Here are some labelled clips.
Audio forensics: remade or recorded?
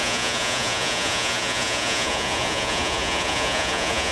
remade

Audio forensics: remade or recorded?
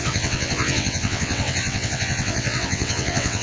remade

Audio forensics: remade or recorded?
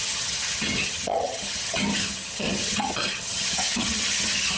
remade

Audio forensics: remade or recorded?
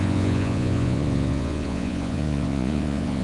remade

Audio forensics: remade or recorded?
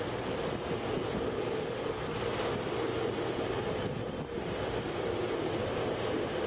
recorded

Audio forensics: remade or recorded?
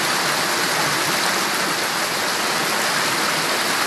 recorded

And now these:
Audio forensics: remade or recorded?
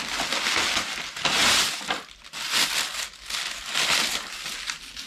recorded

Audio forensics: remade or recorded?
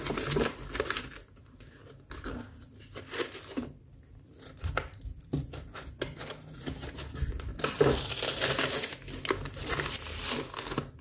recorded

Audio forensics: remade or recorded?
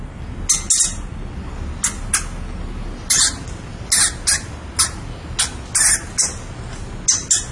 recorded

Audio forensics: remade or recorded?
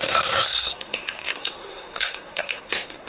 remade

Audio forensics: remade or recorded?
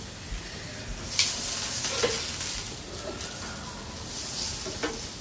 recorded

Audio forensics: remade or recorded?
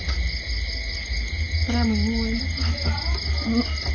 recorded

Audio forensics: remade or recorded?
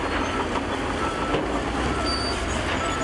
recorded